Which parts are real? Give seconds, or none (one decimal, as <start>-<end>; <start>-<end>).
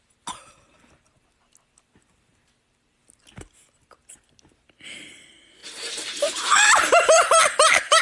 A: 0.0-5.6; 7.4-8.0